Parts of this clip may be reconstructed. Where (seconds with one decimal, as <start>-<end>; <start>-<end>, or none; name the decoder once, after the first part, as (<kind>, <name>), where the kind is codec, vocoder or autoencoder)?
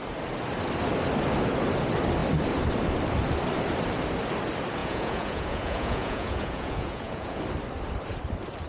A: 4.8-7.4 (vocoder, Vocos)